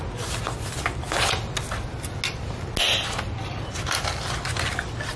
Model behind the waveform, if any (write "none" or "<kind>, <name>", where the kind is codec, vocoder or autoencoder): none